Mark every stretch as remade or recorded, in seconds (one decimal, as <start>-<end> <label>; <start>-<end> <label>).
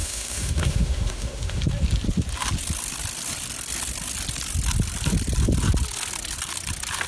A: 0.0-1.6 remade; 1.6-7.1 recorded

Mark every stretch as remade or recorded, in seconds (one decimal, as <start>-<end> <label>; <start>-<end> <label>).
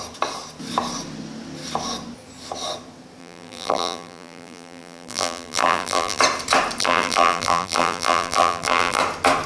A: 0.0-3.2 recorded; 3.2-6.2 remade; 6.2-6.8 recorded; 6.8-9.0 remade; 9.0-9.5 recorded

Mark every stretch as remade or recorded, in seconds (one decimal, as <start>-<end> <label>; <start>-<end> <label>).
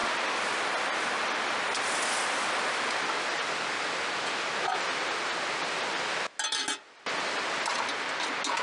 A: 0.0-8.6 recorded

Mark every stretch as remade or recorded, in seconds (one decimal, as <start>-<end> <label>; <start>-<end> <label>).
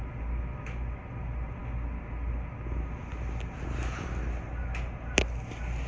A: 0.0-5.9 recorded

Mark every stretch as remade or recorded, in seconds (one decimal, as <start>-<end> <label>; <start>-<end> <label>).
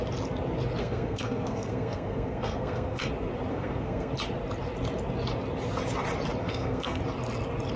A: 0.0-0.8 recorded; 0.8-3.1 remade; 3.1-3.5 recorded; 3.5-4.1 remade; 4.1-6.4 recorded; 6.4-7.0 remade; 7.0-7.8 recorded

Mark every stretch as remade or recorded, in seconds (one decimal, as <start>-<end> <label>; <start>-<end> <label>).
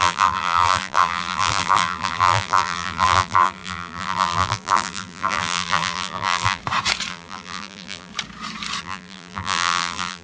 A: 0.0-6.6 remade; 6.6-7.1 recorded; 7.1-8.1 remade; 8.1-8.8 recorded; 8.8-10.2 remade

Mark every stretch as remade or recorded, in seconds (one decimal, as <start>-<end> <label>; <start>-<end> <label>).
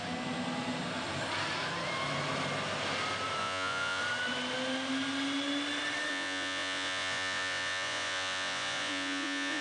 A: 0.0-3.4 recorded; 3.4-4.0 remade; 4.0-6.1 recorded; 6.1-9.6 remade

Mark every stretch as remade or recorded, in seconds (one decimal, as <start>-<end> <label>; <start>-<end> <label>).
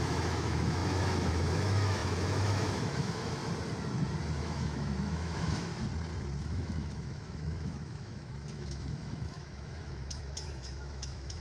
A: 0.0-3.4 remade; 3.4-4.4 recorded; 4.4-5.7 remade; 5.7-6.4 recorded; 6.4-11.4 remade